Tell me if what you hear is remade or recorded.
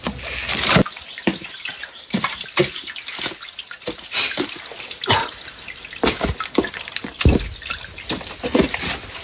recorded